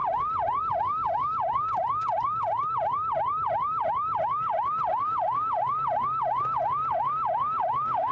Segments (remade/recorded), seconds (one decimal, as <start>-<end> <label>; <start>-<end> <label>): 0.0-8.1 recorded